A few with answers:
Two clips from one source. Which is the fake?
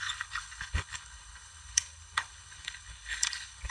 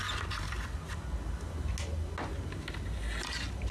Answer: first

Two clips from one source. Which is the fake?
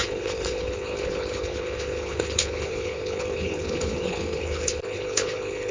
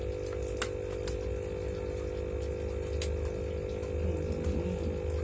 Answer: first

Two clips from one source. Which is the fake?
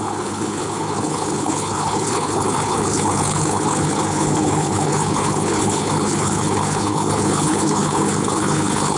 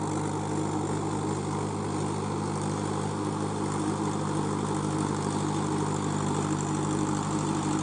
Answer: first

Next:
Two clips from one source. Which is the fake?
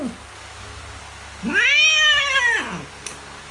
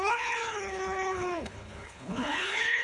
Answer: second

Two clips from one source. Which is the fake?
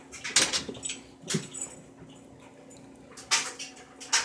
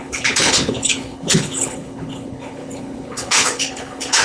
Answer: second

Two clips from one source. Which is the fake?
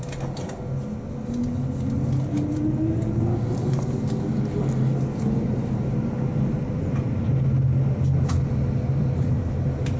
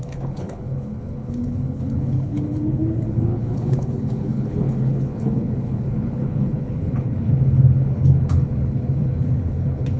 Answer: second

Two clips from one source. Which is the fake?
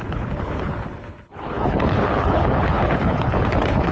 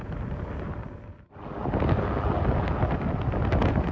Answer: first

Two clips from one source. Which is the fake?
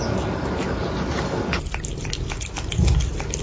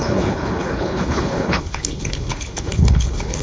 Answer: second